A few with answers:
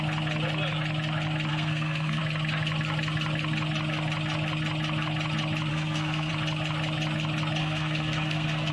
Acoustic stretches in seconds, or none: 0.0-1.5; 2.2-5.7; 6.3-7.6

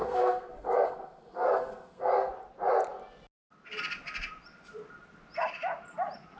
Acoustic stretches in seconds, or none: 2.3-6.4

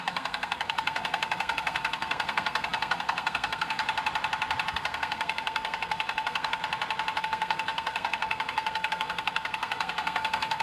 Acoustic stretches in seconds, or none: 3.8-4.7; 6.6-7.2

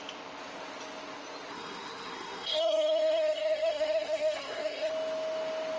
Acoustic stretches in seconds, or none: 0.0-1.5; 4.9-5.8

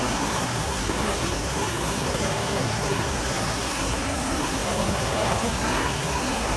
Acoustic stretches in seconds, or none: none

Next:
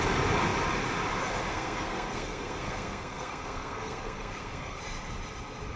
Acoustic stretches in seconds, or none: 0.0-1.5; 4.8-5.8

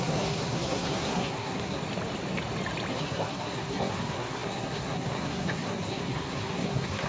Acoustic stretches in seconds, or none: 1.8-2.9

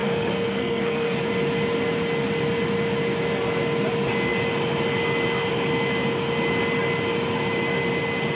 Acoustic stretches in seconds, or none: 1.2-8.3